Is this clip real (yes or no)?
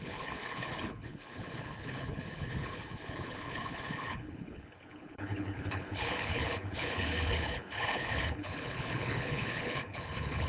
no